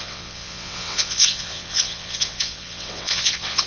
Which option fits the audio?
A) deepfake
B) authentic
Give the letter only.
A